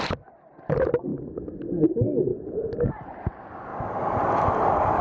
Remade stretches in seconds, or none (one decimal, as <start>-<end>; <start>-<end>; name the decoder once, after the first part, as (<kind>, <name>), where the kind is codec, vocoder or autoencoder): none